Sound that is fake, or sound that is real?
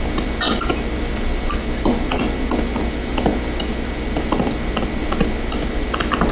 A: real